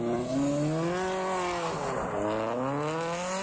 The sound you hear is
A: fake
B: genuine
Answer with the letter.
B